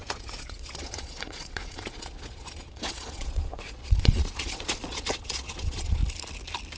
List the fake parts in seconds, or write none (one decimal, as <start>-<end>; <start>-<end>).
0.0-6.0